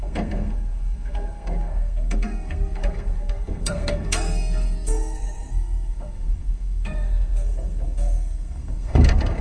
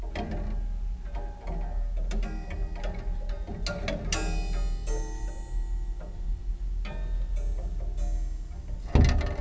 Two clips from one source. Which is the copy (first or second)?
first